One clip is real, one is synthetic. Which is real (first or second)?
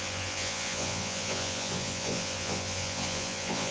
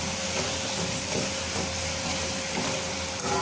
second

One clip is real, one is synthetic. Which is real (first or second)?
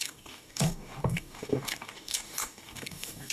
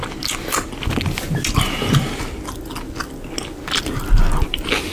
second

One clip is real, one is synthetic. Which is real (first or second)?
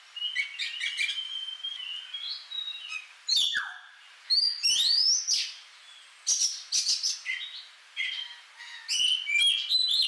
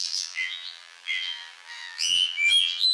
first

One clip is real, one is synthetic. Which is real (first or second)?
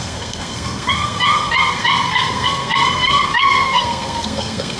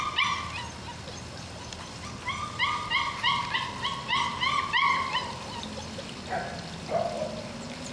second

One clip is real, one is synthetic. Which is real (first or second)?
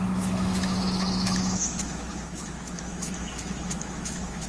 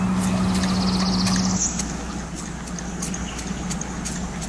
second